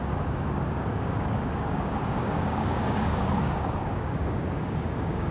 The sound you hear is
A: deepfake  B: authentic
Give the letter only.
A